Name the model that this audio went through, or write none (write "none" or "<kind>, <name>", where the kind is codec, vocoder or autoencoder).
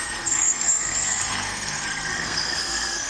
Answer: codec, SNAC